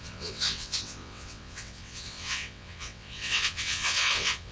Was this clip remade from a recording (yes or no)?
yes